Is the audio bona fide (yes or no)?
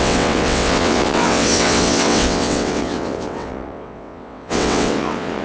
no